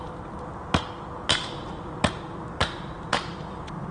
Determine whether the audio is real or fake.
real